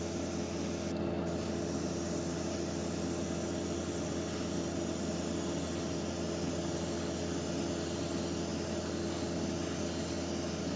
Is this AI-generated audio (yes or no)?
no